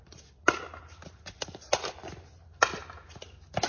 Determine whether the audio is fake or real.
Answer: real